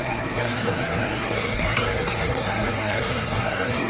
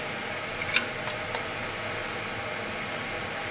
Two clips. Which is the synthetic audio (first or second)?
first